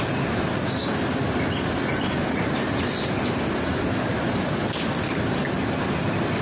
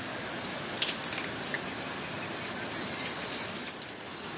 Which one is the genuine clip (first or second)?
second